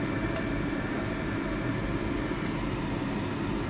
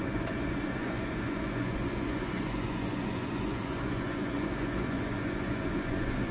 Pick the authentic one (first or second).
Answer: first